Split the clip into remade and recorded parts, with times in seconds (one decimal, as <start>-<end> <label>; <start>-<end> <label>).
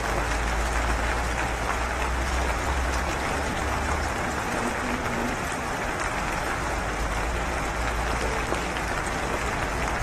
0.0-2.5 recorded; 2.5-4.7 remade; 4.7-5.2 recorded; 5.2-7.7 remade; 7.7-10.0 recorded